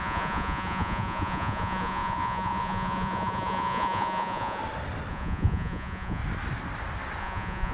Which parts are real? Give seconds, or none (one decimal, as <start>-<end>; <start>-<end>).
4.6-5.1; 6.2-7.2